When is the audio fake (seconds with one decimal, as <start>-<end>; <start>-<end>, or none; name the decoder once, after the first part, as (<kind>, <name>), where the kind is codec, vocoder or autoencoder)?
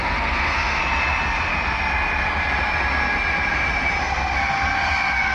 0.0-0.8 (codec, SNAC); 4.0-5.3